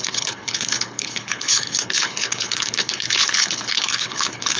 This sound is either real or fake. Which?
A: fake